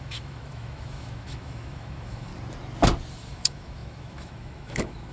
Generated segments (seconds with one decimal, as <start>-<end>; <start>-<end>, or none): 0.0-2.3; 3.1-5.1